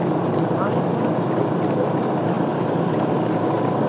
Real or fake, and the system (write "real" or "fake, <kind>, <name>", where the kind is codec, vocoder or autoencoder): real